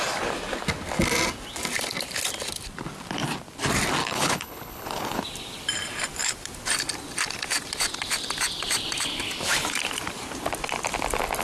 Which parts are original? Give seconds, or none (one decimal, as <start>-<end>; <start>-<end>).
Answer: 0.0-4.0; 5.2-11.4